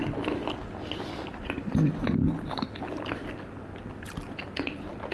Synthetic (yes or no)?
no